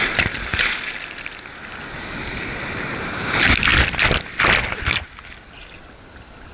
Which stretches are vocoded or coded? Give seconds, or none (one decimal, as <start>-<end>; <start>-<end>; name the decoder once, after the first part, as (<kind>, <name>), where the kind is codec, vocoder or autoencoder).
none